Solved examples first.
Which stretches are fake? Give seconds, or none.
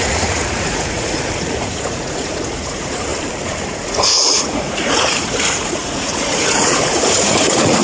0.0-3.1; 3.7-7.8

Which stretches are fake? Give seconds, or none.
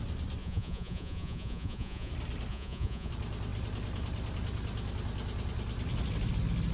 0.4-2.1; 2.5-3.1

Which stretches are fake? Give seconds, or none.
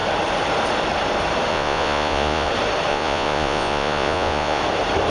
1.5-2.5; 2.9-4.6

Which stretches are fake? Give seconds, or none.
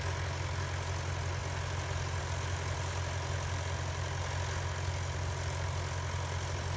none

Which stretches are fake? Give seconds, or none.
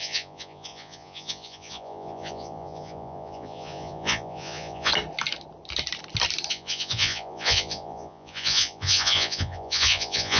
0.0-4.9; 6.5-10.4